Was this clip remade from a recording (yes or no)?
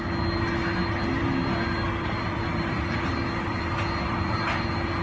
no